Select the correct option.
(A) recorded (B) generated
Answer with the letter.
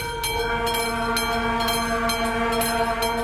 A